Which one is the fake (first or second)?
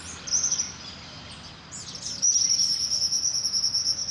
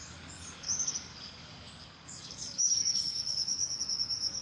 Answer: second